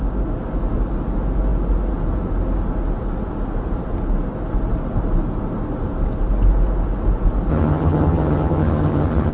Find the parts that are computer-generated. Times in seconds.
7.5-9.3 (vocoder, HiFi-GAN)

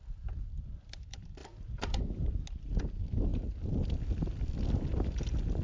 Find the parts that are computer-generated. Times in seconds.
none

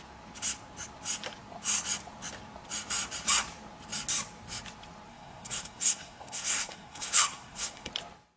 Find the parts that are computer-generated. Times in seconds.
5.1-7.9 (codec, SNAC)